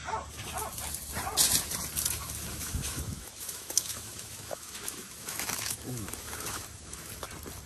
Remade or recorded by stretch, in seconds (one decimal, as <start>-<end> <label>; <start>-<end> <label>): 0.0-2.5 recorded; 2.5-7.1 remade; 7.1-7.7 recorded